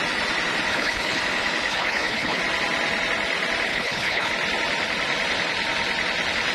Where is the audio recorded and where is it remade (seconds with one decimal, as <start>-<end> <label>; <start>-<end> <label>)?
0.0-0.7 recorded; 0.7-1.2 remade; 1.2-1.7 recorded; 1.7-2.4 remade; 2.4-3.7 recorded; 3.7-4.3 remade; 4.3-6.5 recorded